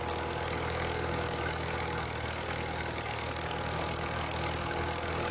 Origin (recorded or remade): remade